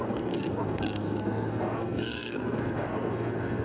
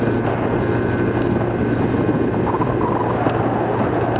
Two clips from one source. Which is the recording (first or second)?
second